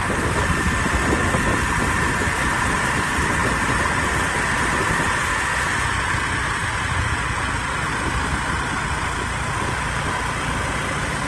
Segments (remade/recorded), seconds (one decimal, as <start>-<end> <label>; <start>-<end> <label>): 0.0-11.3 recorded